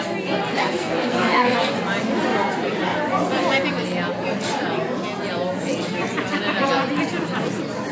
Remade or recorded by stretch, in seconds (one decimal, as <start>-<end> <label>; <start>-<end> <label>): 0.0-0.5 recorded; 0.5-1.7 remade; 1.7-7.9 recorded